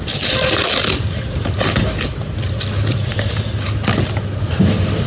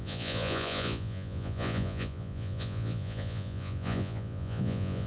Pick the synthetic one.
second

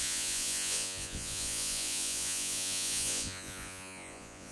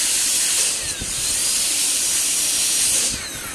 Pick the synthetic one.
first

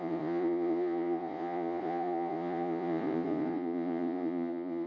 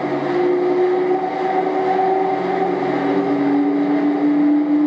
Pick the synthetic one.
first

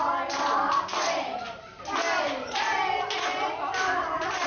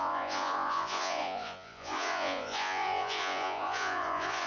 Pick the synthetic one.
second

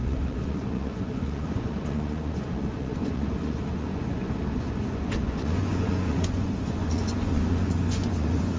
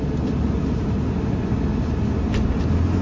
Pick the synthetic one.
first